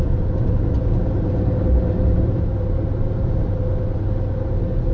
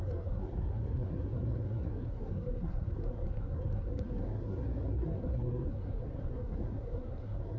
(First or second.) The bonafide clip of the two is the first